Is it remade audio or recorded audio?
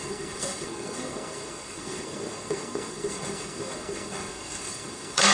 remade